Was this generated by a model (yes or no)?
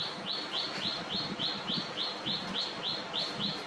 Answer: yes